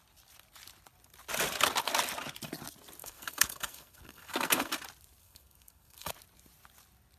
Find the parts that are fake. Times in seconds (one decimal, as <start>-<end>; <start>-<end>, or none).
3.0-4.7; 5.2-6.1